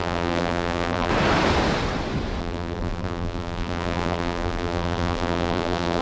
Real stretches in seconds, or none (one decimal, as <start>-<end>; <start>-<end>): 1.1-2.4